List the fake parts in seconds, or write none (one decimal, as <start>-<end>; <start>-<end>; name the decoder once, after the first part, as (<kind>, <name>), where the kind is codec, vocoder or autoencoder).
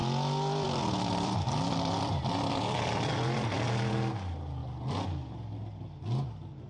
0.0-3.9 (vocoder, BigVGAN v2)